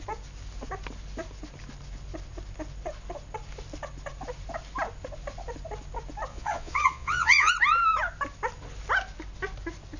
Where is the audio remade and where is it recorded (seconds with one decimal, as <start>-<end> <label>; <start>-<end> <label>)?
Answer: 0.0-6.3 recorded; 6.3-7.5 remade; 7.5-10.0 recorded